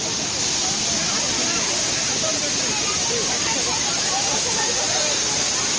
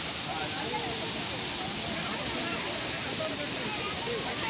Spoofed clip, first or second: first